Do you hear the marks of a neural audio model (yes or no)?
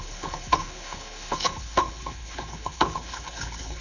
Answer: yes